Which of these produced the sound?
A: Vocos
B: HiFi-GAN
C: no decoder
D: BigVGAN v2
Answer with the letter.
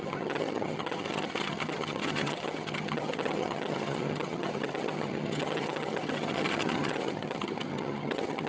B